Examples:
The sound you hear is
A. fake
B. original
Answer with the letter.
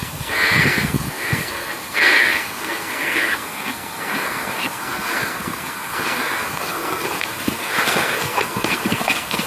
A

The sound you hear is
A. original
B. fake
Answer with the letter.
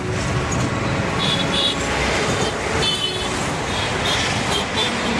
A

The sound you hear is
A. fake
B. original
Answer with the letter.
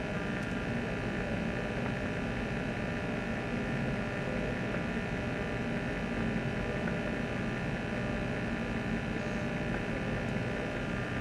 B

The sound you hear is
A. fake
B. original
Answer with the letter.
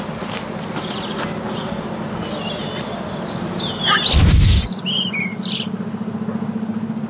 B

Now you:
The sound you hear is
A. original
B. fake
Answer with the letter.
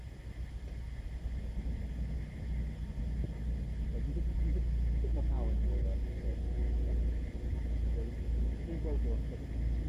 A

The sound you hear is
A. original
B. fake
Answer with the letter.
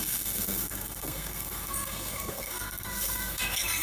B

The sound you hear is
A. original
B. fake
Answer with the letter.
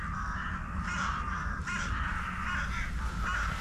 A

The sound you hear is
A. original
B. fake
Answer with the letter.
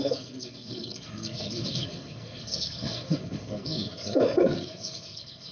B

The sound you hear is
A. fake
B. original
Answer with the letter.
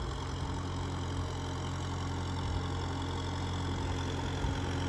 B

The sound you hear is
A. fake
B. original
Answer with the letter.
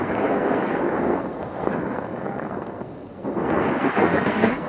A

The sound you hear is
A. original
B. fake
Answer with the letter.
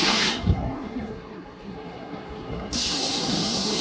B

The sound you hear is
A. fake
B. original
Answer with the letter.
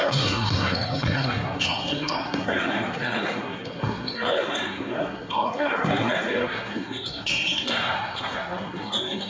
A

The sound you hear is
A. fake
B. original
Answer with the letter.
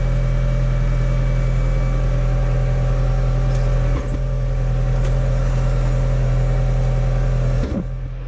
B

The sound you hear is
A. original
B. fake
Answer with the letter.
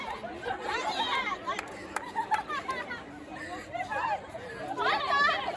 A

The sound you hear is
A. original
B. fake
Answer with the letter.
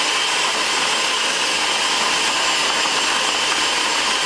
A